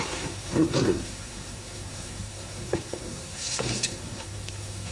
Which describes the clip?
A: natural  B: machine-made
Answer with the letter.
B